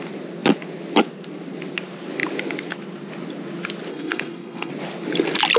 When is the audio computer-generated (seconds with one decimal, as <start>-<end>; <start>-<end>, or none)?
3.9-4.7